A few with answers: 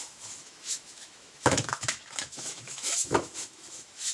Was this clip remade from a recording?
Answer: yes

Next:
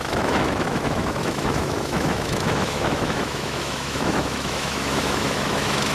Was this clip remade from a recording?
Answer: yes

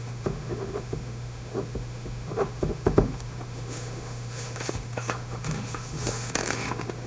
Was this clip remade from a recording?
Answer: yes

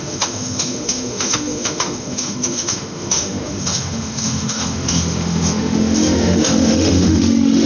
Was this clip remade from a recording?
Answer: yes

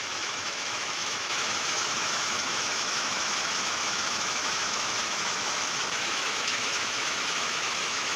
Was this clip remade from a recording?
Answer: yes